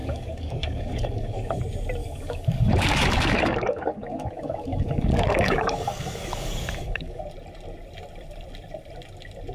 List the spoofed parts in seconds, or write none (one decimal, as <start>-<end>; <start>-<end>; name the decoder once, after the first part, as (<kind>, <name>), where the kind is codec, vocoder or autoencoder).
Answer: 0.0-1.6 (codec, DAC); 2.0-7.2